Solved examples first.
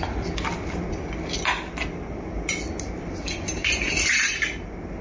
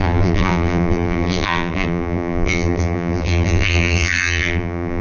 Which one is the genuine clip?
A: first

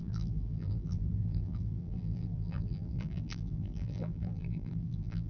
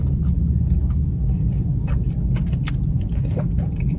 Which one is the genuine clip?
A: second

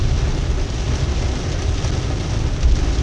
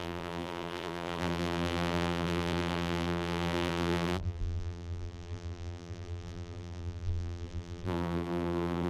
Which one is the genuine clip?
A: first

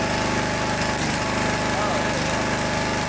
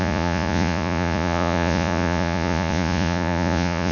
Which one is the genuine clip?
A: first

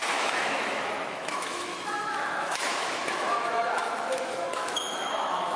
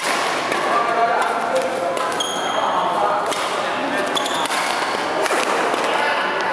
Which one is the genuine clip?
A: second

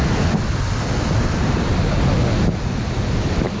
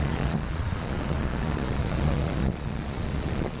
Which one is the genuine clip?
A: first